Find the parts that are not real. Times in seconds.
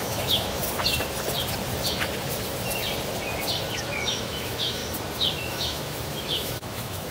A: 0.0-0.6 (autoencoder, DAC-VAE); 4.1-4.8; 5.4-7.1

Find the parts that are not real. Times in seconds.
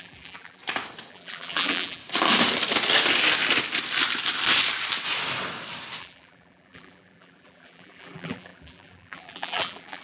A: 0.0-0.6 (vocoder, BigVGAN v2); 1.1-2.0; 6.0-10.0